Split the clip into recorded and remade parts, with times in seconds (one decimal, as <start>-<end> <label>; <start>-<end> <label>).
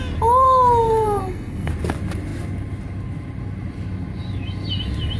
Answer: 0.0-0.8 recorded; 0.8-1.7 remade; 1.7-5.2 recorded